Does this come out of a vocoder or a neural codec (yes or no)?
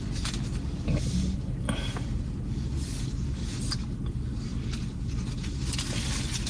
no